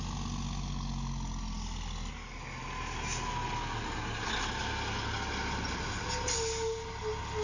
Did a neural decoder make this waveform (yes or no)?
no